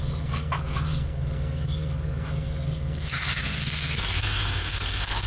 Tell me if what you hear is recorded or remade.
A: remade